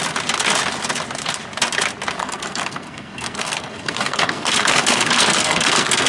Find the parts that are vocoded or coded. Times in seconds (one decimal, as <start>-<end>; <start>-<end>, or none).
2.2-6.1